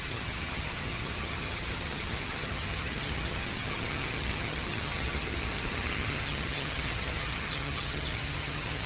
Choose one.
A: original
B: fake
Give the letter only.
B